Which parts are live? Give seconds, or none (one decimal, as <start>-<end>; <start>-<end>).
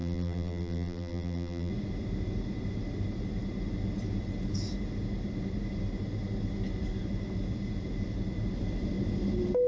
1.7-9.7